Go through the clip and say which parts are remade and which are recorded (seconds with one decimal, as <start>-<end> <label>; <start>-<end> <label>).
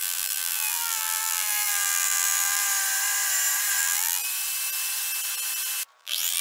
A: 0.0-2.6 remade; 2.6-3.8 recorded; 3.8-4.2 remade; 4.2-6.0 recorded; 6.0-6.4 remade